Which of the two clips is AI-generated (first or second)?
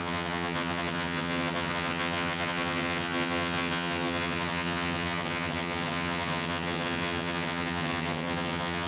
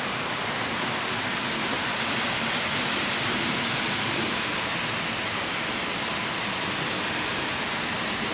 first